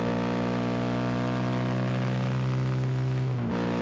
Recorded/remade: recorded